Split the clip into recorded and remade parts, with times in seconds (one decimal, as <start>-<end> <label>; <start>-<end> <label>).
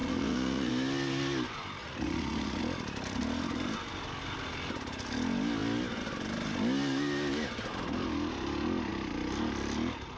0.0-0.7 remade; 0.7-1.8 recorded; 1.8-2.6 remade; 2.6-10.2 recorded